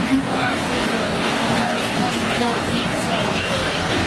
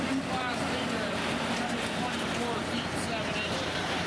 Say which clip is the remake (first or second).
first